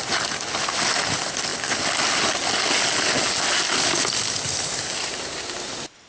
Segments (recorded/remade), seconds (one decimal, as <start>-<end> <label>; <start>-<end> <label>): 0.0-6.1 recorded